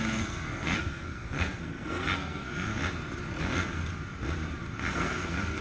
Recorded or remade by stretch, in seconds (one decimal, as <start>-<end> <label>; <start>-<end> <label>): 0.0-2.7 remade; 2.7-3.4 recorded; 3.4-3.9 remade; 3.9-4.7 recorded; 4.7-5.6 remade